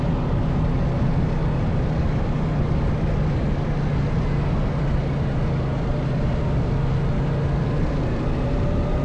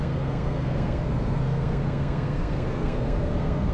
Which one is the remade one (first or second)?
second